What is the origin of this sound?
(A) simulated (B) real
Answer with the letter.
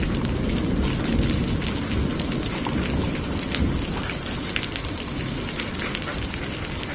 B